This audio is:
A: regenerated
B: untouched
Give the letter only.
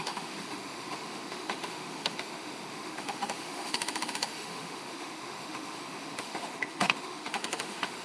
A